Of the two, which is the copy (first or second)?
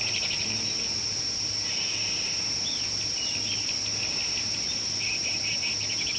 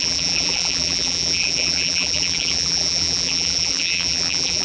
second